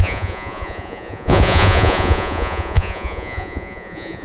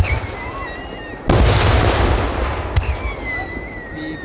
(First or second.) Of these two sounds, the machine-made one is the first